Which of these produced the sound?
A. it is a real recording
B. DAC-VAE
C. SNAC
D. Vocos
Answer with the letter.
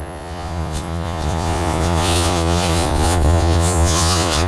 D